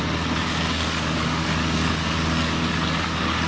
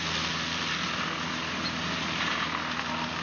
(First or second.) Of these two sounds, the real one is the second